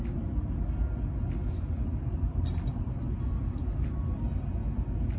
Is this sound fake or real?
real